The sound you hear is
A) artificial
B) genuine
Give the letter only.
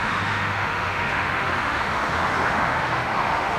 A